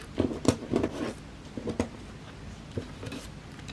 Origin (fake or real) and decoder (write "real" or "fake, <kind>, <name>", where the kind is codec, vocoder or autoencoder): real